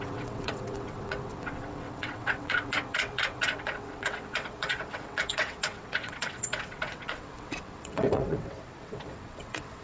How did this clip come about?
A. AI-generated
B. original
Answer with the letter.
A